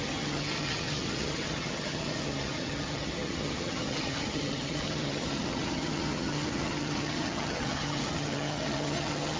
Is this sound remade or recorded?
remade